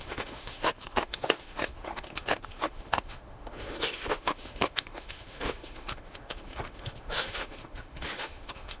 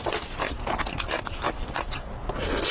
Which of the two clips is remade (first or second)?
first